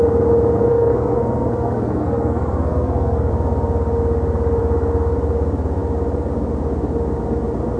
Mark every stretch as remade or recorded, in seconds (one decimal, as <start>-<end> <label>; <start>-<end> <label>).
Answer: 0.0-0.7 recorded; 0.7-3.3 remade; 3.3-7.8 recorded